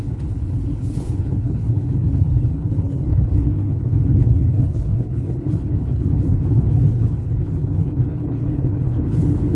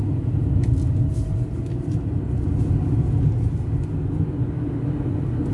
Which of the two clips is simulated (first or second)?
first